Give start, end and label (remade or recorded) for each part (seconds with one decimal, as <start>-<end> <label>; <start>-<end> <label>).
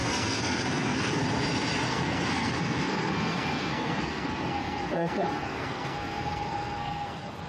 0.0-1.2 remade; 1.2-1.9 recorded; 1.9-7.5 remade